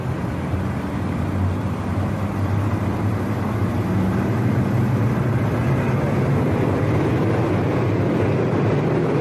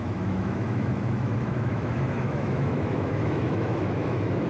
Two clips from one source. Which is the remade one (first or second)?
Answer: second